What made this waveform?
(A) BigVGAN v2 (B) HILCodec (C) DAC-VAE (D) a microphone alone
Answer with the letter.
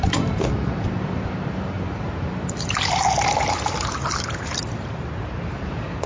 A